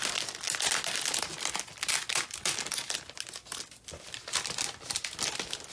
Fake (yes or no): no